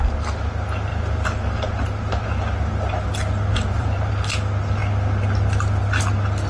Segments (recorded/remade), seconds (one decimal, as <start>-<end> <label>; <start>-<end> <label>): 0.0-0.9 recorded; 0.9-2.4 remade; 2.4-3.5 recorded; 3.5-4.1 remade; 4.1-6.5 recorded